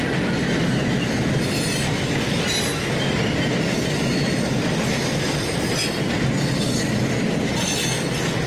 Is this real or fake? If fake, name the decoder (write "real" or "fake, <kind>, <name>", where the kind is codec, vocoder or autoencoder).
real